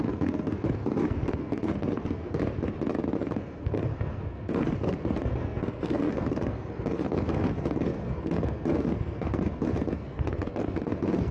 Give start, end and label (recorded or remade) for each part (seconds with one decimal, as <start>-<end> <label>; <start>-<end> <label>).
0.0-2.4 remade; 2.4-3.2 recorded; 3.2-11.3 remade